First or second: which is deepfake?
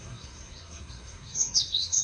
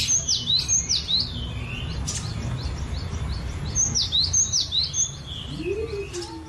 first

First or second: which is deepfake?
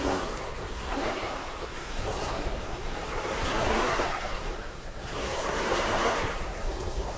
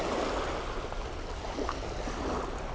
first